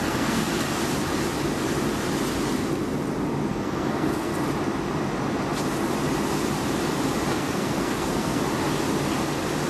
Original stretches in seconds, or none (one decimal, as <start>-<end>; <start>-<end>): 0.5-3.5; 4.3-7.3; 8.4-9.7